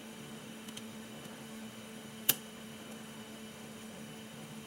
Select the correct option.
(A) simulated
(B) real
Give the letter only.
A